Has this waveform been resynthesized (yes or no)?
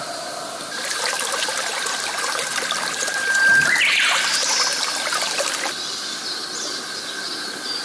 no